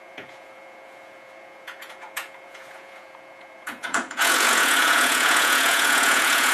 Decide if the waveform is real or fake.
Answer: fake